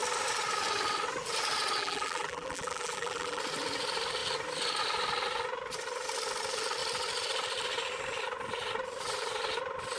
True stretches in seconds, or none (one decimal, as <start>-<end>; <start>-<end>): 0.0-1.8; 3.4-10.0